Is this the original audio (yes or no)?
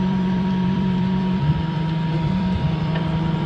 no